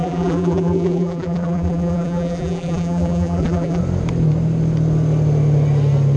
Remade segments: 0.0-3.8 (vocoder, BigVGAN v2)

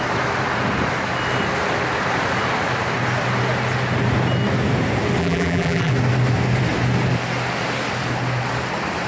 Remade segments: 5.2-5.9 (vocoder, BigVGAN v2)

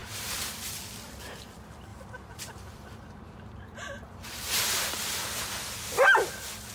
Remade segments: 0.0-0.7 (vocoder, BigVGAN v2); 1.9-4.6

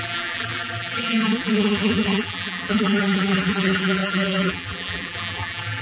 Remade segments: 0.0-5.8 (vocoder, BigVGAN v2)

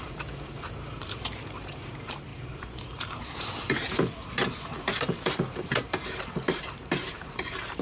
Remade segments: 0.0-7.8 (vocoder, BigVGAN v2)

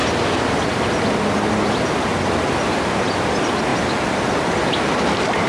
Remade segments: 2.1-2.8 (vocoder, BigVGAN v2)

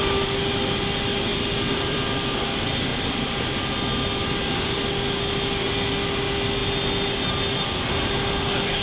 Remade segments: 1.3-2.5 (vocoder, BigVGAN v2); 2.9-3.5

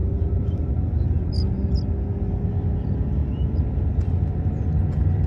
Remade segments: 2.5-5.3 (vocoder, BigVGAN v2)